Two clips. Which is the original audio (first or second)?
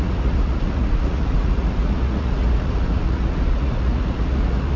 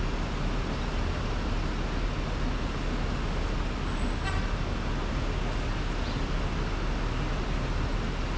second